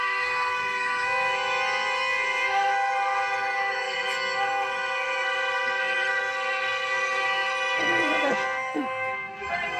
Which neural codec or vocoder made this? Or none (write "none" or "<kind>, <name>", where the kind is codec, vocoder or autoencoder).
codec, SNAC